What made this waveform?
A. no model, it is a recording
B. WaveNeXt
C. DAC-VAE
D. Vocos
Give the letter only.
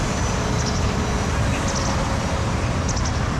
A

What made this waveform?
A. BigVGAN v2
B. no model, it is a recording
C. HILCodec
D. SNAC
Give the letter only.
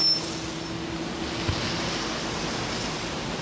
B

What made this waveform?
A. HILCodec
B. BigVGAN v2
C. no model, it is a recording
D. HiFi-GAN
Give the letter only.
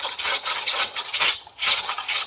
D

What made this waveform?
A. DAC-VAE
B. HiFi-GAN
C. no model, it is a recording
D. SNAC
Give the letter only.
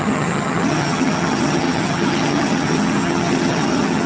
B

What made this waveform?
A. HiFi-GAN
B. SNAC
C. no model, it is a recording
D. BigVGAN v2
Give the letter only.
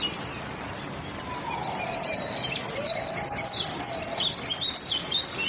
C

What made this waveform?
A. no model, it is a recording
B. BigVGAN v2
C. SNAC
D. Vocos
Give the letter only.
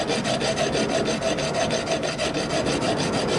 A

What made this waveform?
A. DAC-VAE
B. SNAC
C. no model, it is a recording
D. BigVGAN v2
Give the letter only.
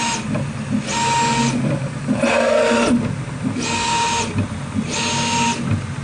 C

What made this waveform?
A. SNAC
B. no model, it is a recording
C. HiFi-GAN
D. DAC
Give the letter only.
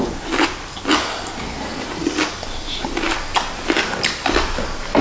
B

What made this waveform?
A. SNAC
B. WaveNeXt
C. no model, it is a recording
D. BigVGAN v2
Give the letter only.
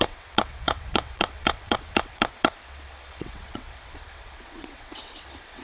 B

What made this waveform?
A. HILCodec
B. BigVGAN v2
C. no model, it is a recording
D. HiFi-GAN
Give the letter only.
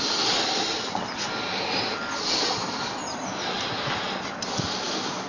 C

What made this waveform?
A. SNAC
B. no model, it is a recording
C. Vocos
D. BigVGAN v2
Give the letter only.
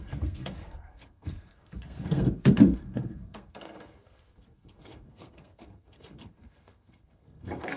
A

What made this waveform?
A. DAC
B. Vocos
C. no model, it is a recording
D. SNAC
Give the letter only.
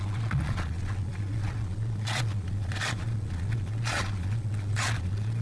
B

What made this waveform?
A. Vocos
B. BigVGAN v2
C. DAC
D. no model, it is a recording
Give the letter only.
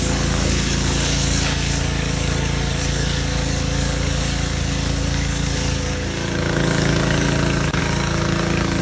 C